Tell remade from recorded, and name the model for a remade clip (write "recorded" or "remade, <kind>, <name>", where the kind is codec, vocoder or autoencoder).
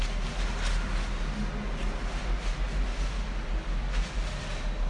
recorded